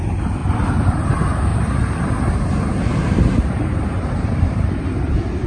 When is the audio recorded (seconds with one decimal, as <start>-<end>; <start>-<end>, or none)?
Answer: 0.0-0.4; 1.0-1.5; 4.8-5.5